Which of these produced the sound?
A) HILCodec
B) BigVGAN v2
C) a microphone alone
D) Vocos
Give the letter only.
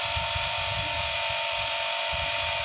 B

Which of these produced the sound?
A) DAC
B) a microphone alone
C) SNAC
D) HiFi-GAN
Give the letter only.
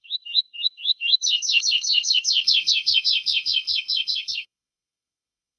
C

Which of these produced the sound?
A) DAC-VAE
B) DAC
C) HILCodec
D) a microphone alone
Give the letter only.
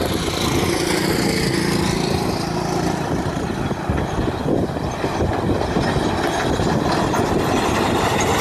D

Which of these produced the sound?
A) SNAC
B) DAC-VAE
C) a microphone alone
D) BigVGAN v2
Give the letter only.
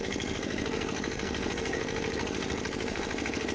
A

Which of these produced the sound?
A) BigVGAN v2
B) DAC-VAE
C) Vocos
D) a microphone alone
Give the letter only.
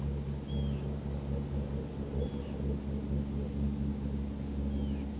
D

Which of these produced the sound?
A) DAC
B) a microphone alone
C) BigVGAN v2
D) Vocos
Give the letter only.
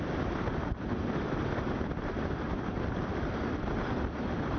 C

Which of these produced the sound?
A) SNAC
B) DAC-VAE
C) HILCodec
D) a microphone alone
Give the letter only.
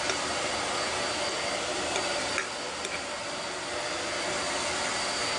D